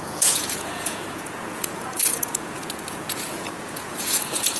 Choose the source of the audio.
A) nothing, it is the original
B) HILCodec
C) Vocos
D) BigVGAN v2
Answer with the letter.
C